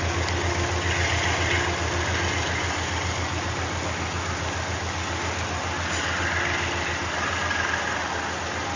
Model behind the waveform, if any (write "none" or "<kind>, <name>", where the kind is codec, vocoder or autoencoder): none